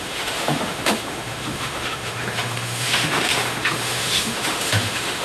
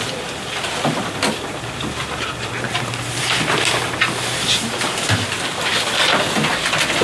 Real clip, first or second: second